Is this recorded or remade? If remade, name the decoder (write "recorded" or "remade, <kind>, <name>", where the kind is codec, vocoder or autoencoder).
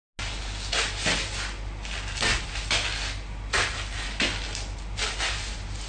recorded